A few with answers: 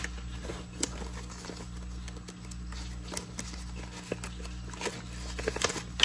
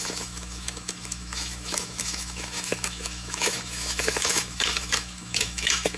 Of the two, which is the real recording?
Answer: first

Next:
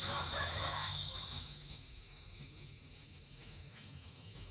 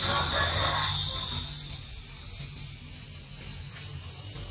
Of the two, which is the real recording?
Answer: second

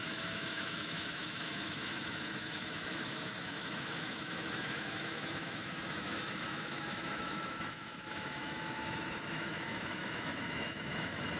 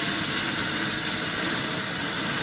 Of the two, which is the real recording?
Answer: second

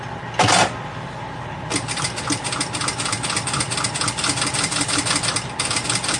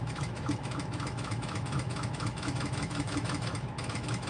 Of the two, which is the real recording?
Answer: first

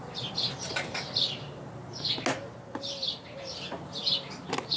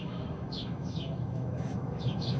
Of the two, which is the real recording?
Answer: first